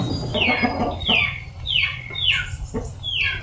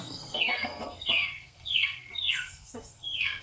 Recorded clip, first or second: first